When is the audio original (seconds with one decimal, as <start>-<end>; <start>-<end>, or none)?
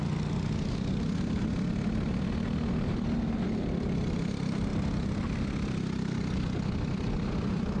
0.0-7.8